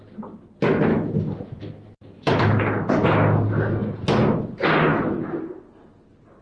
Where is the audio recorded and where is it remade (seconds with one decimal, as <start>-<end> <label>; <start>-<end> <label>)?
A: 0.0-0.9 recorded; 0.9-2.6 remade; 2.6-6.4 recorded